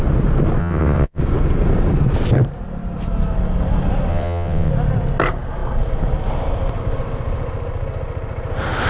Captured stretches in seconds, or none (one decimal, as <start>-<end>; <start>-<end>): 0.0-0.6; 1.2-4.1; 4.7-8.9